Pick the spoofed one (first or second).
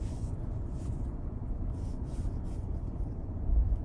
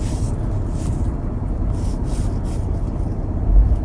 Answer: first